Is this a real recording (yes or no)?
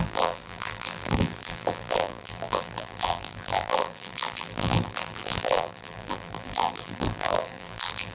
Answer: no